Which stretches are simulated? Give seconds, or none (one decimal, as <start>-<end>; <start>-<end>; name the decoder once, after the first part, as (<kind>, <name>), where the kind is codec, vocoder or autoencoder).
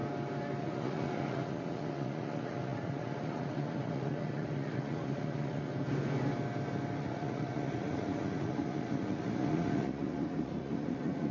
0.6-5.7 (vocoder, Vocos); 7.0-11.3